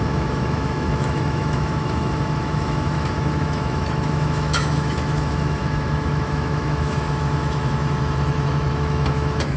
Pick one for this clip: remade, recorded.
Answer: remade